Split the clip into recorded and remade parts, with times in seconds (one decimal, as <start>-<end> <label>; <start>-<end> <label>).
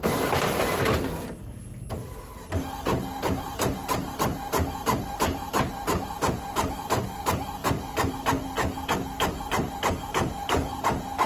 0.0-11.3 recorded